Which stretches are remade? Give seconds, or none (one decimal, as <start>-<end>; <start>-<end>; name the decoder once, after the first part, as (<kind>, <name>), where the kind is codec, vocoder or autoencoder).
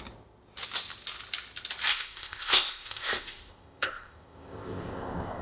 1.9-5.4 (codec, ZipCodec)